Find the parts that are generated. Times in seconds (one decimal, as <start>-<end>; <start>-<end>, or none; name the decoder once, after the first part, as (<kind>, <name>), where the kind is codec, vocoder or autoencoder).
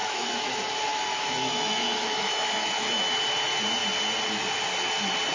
0.0-0.5 (autoencoder, DAC-VAE); 1.1-3.1